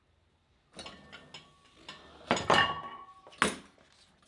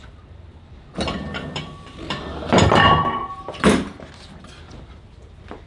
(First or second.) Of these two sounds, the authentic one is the first